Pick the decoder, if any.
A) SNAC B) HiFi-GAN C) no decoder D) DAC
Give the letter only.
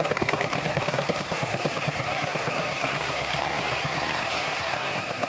A